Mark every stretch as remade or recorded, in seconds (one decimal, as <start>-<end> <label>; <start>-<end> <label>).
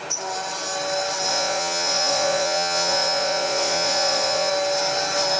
0.0-1.3 recorded; 1.3-4.5 remade; 4.5-5.4 recorded